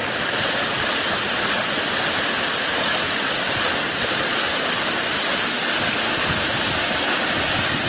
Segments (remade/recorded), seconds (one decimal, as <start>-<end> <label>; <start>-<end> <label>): 0.0-7.9 recorded